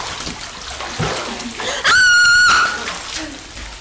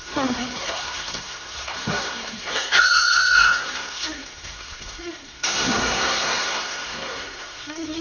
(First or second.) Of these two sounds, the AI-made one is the second